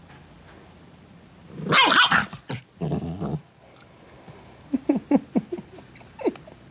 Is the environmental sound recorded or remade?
recorded